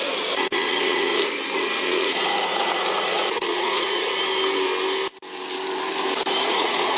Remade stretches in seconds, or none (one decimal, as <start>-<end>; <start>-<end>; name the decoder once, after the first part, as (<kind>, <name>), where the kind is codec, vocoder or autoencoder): 0.0-4.1 (vocoder, Vocos); 6.4-7.0